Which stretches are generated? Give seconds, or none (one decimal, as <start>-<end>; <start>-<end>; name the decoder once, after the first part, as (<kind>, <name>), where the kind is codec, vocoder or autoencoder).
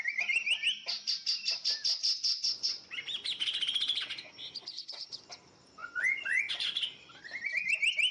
2.2-2.9 (vocoder, Vocos); 5.8-6.5